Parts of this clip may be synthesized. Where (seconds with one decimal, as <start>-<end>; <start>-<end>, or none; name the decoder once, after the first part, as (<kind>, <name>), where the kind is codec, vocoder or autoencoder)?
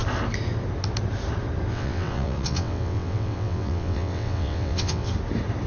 1.7-5.1 (vocoder, WaveNeXt)